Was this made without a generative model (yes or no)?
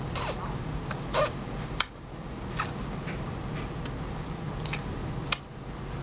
yes